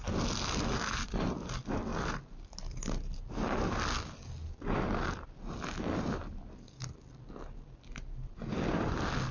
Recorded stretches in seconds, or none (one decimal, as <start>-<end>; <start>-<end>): 0.0-9.3